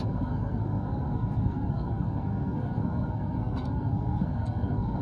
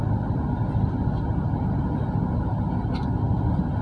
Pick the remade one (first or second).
first